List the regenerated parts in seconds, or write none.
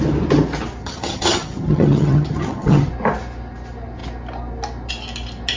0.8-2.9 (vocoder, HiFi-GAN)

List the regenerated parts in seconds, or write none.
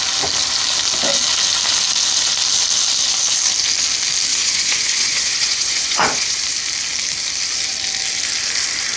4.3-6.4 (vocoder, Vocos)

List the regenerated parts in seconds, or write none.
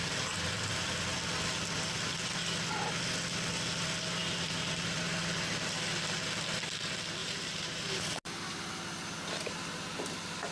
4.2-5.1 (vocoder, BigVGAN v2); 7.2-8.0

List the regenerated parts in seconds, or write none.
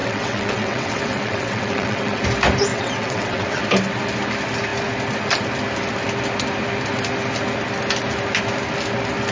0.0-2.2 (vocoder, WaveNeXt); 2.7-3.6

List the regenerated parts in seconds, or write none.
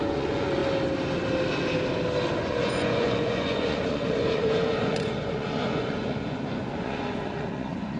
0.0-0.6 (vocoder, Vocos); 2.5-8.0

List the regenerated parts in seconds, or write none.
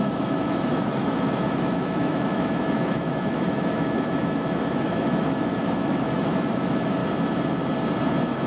0.0-7.0 (autoencoder, DAC-VAE)